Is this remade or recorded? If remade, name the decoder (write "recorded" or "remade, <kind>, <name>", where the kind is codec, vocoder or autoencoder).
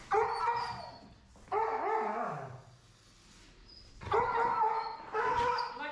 recorded